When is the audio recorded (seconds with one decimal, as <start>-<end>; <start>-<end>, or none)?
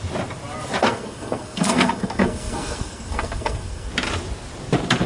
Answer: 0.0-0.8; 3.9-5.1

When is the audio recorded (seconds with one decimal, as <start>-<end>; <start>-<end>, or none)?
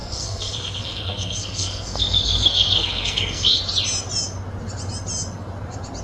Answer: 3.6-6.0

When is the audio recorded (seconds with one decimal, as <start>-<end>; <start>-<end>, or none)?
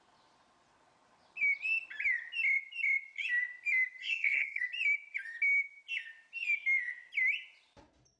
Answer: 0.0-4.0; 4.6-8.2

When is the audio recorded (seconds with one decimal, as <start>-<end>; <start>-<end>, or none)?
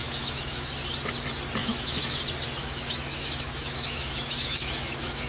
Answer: 0.7-1.6; 2.2-2.6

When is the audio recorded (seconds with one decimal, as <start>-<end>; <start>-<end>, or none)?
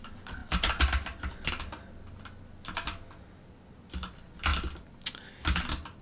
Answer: 0.0-6.0